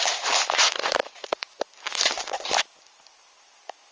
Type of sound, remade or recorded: remade